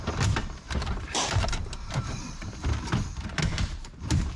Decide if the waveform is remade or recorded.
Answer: remade